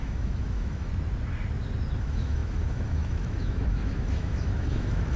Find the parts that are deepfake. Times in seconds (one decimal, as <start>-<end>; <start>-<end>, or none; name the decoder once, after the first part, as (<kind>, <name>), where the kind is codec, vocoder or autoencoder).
0.0-0.9 (autoencoder, DAC-VAE); 2.0-5.2